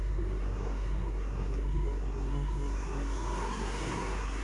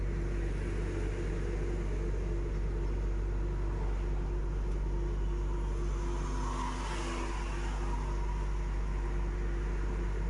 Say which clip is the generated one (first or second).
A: first